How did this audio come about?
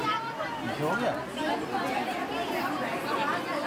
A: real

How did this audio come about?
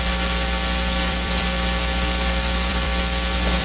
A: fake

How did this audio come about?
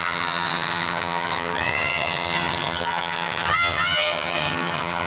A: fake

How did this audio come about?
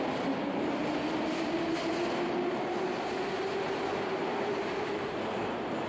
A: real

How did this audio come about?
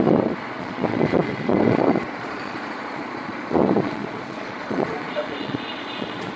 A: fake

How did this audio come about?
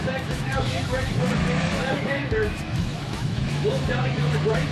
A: fake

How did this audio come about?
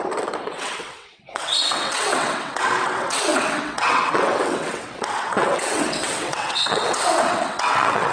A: fake